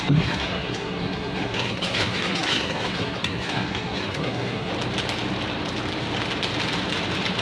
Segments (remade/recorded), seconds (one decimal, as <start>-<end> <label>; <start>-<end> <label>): 0.0-4.7 remade; 4.7-7.4 recorded